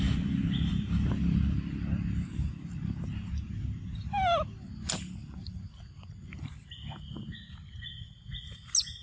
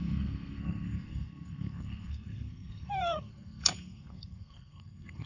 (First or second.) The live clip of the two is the first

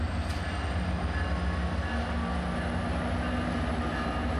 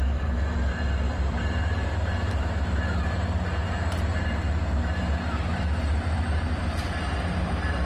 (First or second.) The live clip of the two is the first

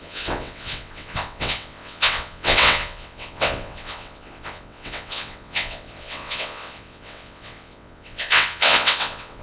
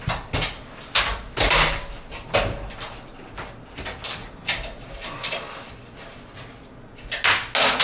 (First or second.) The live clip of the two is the second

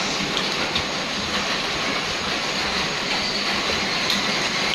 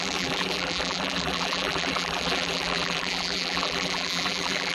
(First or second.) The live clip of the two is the first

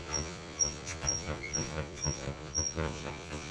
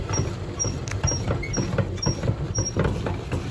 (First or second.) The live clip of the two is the second